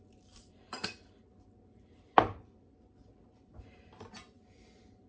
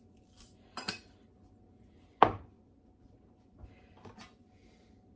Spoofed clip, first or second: first